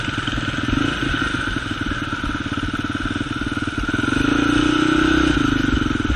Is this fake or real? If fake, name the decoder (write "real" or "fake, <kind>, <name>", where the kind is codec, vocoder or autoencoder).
real